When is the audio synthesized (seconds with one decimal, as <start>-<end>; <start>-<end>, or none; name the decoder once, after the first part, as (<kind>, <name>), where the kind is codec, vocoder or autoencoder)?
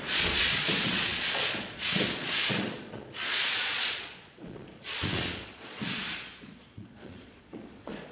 0.0-8.1 (vocoder, Vocos)